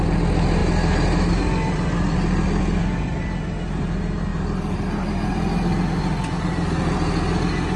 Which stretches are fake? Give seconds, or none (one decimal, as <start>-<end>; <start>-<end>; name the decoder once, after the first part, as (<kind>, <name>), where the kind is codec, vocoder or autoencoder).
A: none

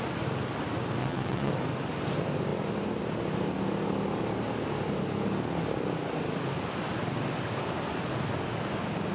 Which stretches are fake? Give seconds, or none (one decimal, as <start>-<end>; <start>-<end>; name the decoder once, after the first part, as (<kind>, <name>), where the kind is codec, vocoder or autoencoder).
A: 1.0-1.5 (vocoder, WaveNeXt)

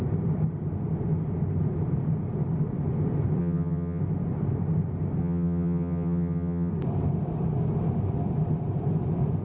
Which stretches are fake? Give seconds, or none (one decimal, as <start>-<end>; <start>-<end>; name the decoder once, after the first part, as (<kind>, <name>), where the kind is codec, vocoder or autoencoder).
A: 3.4-4.0 (vocoder, HiFi-GAN); 5.2-6.7